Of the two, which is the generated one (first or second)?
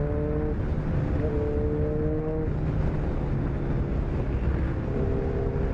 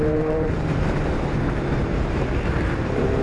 second